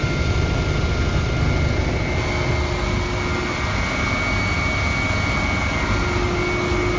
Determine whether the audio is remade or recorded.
recorded